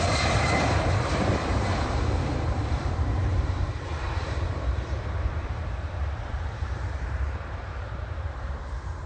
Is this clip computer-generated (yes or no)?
yes